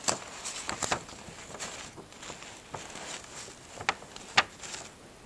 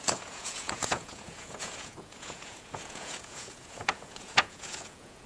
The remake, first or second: second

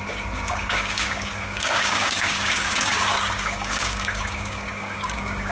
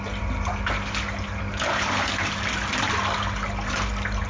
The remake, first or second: first